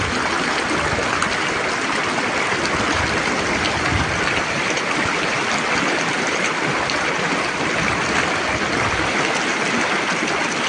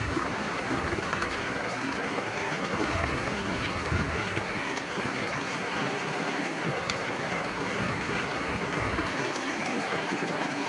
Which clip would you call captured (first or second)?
first